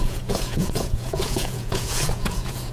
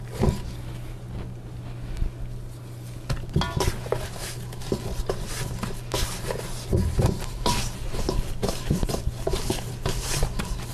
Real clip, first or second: second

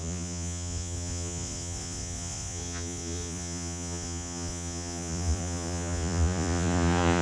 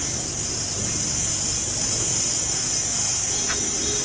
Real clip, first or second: second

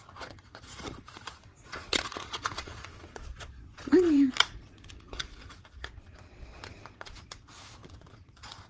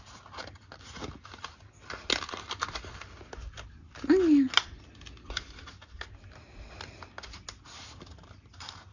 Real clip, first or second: second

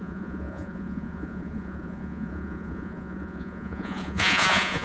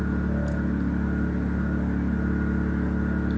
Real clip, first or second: second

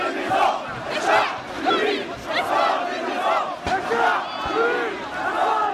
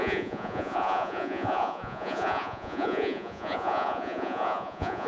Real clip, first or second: first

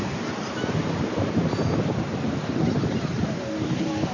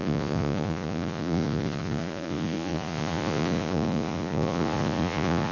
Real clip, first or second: first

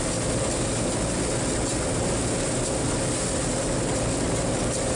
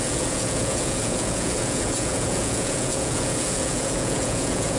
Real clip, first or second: first